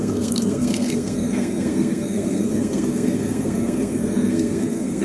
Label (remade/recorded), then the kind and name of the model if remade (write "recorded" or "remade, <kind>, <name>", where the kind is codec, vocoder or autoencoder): remade, codec, SNAC